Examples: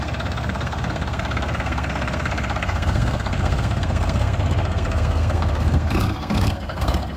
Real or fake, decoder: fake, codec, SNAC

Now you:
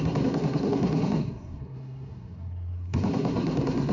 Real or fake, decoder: fake, codec, SNAC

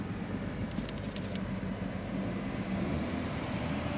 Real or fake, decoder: fake, vocoder, BigVGAN v2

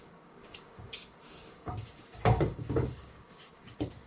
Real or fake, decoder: fake, codec, DAC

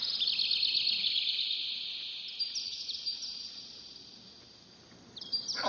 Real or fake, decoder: real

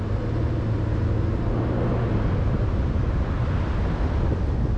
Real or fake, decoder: real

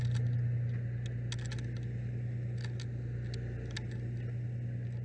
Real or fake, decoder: real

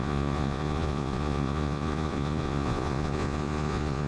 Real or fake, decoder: fake, vocoder, Vocos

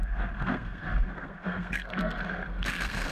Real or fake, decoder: fake, codec, SNAC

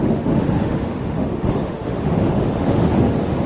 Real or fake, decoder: fake, autoencoder, DAC-VAE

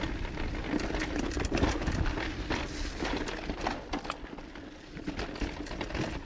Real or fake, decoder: real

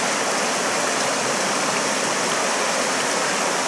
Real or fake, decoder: real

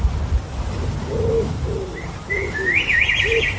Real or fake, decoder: real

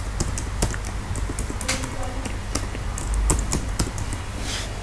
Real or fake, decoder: real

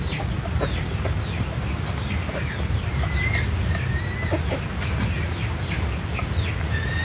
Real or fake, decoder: real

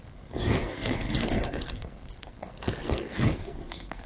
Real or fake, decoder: fake, codec, SNAC